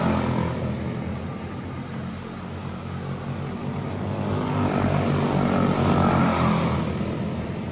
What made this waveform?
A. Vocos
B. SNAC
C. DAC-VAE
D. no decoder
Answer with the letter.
D